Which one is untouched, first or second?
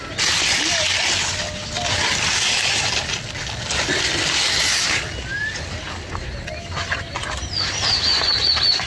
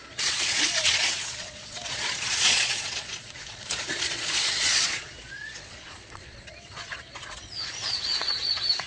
first